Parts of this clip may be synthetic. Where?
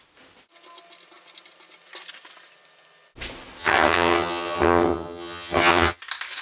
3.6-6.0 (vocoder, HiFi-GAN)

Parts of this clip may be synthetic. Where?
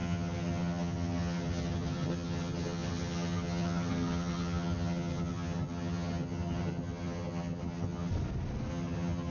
0.0-8.1 (vocoder, HiFi-GAN); 8.7-9.3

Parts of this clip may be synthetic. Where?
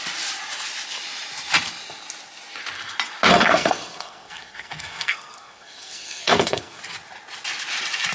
3.3-6.8 (codec, SNAC)